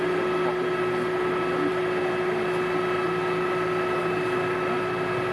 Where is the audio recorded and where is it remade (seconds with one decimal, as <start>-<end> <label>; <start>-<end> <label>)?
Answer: 0.0-5.3 recorded